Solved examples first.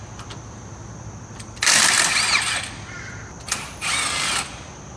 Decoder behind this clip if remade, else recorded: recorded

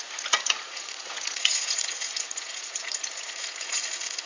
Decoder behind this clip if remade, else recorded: remade, vocoder, Vocos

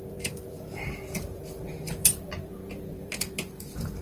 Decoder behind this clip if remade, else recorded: remade, vocoder, BigVGAN v2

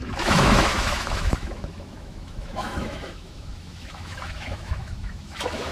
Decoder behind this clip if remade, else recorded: remade, autoencoder, DAC-VAE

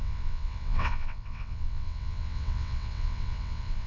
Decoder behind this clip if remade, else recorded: remade, vocoder, WaveNeXt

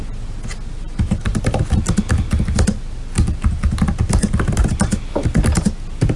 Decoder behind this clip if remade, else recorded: recorded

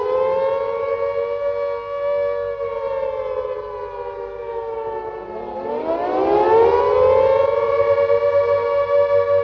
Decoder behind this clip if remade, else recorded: recorded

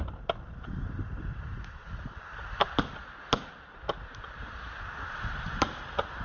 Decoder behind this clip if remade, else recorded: recorded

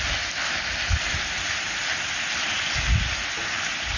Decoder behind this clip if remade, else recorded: recorded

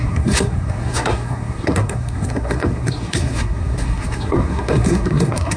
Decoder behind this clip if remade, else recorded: remade, codec, SNAC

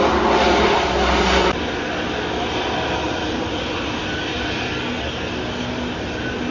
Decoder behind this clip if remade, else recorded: recorded